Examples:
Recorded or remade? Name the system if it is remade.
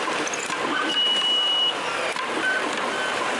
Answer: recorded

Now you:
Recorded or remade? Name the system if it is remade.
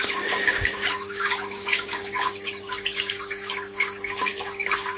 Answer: remade, codec, DAC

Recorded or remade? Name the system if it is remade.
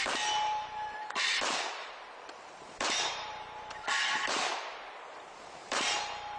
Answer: remade, vocoder, BigVGAN v2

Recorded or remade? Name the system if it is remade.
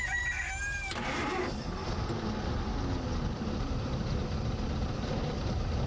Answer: recorded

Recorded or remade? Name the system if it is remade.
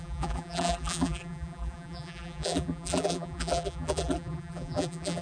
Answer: remade, vocoder, BigVGAN v2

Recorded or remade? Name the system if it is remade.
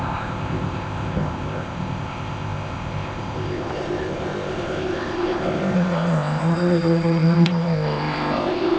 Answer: remade, codec, ZipCodec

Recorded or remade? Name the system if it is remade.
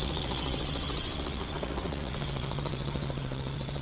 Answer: remade, vocoder, WaveNeXt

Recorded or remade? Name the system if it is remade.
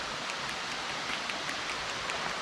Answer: recorded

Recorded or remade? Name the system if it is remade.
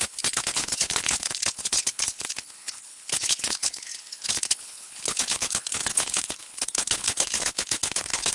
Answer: remade, codec, HILCodec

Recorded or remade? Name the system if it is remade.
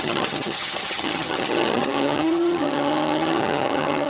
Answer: remade, vocoder, HiFi-GAN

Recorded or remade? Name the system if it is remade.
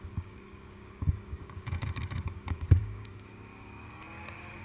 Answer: remade, codec, DAC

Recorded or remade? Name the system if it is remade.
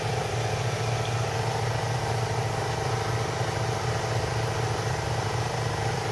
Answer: remade, vocoder, BigVGAN v2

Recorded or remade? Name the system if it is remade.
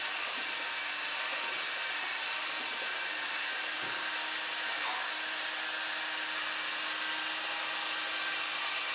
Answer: recorded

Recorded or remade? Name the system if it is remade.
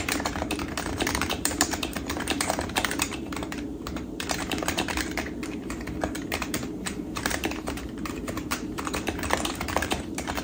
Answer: remade, vocoder, BigVGAN v2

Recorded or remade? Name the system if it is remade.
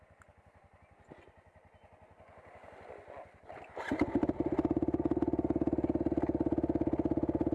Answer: recorded